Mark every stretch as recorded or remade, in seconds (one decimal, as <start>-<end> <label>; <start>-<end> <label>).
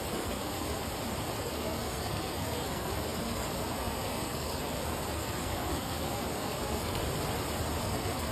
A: 0.0-0.8 remade; 0.8-1.4 recorded; 1.4-7.0 remade; 7.0-7.8 recorded; 7.8-8.3 remade